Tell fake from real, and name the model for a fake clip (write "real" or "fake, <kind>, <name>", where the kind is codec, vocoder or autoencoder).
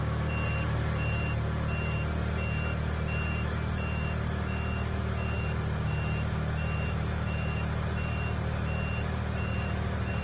real